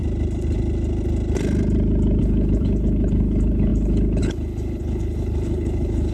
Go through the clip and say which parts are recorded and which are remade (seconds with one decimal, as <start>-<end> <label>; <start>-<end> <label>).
0.0-2.2 recorded; 2.2-6.1 remade